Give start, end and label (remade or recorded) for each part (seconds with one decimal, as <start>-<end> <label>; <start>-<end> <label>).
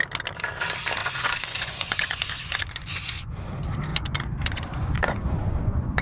0.0-1.0 recorded; 1.0-3.3 remade; 3.3-3.9 recorded; 3.9-6.0 remade